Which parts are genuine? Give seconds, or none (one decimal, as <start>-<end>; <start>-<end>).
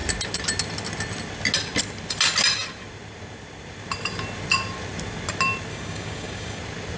0.0-5.7; 6.6-7.0